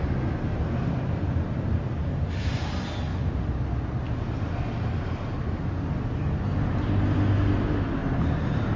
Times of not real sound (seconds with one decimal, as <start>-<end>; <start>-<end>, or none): none